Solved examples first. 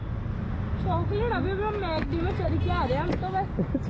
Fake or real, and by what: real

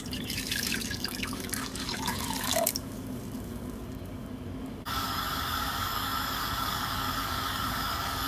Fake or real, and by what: fake, codec, DAC